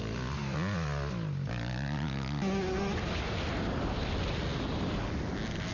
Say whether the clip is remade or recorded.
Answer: recorded